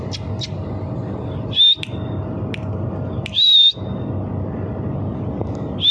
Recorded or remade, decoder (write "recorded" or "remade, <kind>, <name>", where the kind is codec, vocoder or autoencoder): recorded